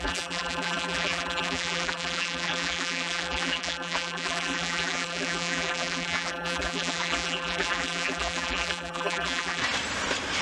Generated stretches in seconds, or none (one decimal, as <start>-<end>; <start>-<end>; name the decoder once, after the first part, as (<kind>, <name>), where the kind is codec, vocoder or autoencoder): 0.0-9.6 (vocoder, BigVGAN v2)